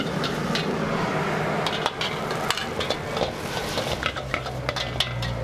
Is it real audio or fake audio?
real